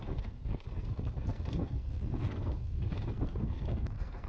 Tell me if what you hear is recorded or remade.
remade